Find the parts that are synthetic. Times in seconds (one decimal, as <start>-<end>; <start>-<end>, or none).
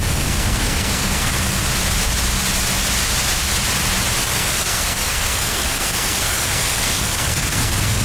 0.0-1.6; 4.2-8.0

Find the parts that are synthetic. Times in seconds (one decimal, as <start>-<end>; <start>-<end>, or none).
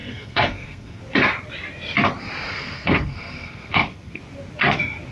0.0-1.0; 2.5-4.2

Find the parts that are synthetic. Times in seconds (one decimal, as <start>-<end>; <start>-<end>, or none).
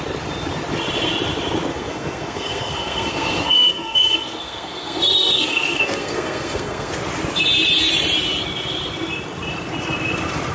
1.7-6.9